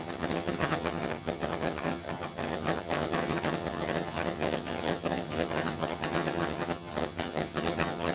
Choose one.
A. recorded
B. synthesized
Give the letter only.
B